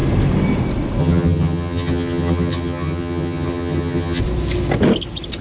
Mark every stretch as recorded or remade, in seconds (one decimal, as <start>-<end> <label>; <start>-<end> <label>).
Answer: 0.0-1.0 recorded; 1.0-4.2 remade; 4.2-5.4 recorded